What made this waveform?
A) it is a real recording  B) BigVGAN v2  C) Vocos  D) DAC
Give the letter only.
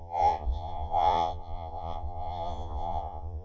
C